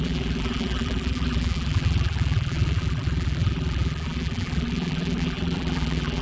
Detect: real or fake fake